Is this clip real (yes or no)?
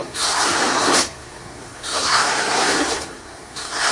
no